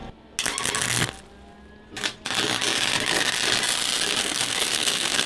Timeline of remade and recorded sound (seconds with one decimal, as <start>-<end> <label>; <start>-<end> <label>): 0.0-4.2 recorded; 4.2-5.3 remade